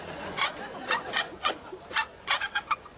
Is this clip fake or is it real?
fake